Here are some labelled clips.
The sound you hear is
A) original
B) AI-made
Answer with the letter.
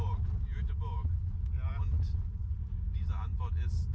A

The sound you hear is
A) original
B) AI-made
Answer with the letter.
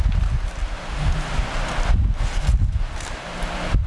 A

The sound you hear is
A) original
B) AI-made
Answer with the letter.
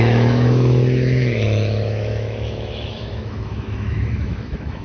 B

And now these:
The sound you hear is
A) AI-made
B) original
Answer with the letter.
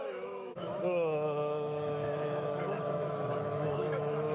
A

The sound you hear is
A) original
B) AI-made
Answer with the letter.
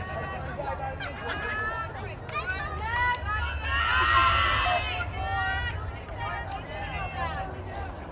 A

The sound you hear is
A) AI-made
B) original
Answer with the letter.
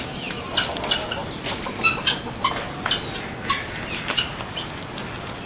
B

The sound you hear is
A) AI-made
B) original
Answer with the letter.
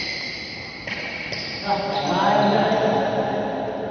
B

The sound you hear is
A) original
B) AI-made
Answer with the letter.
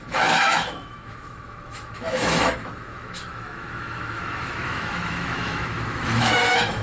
B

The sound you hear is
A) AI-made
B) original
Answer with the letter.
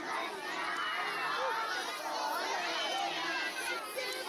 B